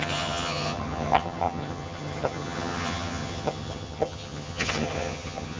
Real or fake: fake